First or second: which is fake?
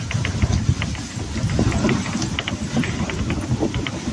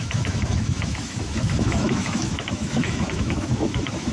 second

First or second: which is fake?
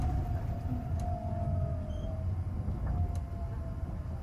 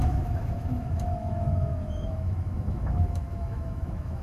second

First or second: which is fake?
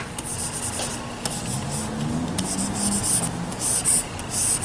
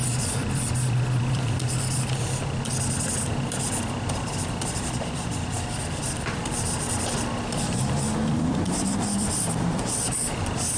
second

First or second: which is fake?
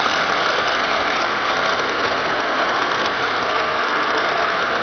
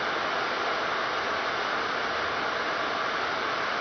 first